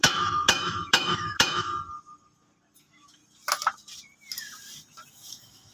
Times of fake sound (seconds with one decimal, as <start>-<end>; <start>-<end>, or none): 0.0-1.7; 2.8-3.2; 5.1-5.7